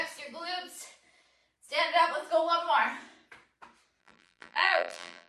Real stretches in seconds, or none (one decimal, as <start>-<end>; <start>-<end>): 0.0-4.0